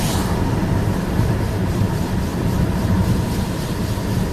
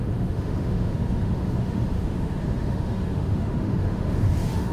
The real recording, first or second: first